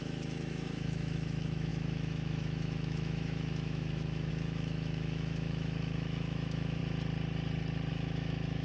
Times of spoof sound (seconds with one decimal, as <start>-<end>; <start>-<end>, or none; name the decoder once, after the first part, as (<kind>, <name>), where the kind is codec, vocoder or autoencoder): 0.0-6.8 (autoencoder, DAC-VAE); 7.9-8.6